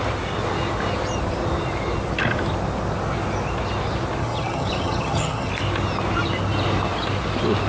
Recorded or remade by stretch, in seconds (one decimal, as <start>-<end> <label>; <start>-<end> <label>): 0.0-4.2 recorded; 4.2-5.5 remade; 5.5-7.7 recorded